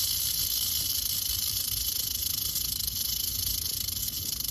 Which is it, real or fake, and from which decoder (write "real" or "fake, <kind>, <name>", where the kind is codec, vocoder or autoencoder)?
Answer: real